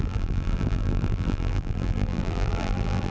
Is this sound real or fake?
fake